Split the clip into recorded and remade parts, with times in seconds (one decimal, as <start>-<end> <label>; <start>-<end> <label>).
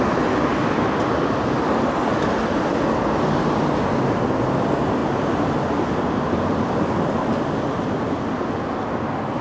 0.0-9.4 recorded